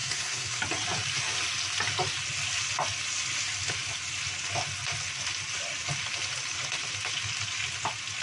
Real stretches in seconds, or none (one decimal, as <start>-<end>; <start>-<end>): 0.6-8.2